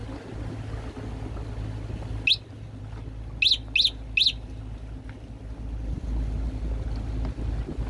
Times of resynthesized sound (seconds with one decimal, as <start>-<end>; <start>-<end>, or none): none